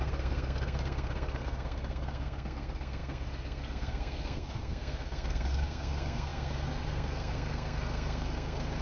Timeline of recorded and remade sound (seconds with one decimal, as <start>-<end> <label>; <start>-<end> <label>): 0.0-8.8 remade